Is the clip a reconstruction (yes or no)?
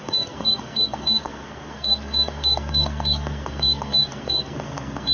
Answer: yes